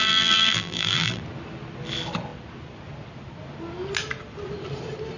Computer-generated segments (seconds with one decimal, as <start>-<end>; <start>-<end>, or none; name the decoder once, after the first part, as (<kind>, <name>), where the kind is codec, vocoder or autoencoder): 0.0-1.2 (vocoder, BigVGAN v2)